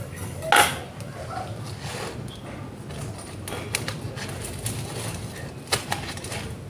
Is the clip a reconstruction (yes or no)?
no